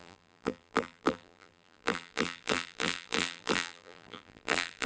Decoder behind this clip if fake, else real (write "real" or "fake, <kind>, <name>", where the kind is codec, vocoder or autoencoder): fake, vocoder, BigVGAN v2